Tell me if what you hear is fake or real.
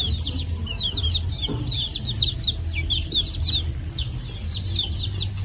real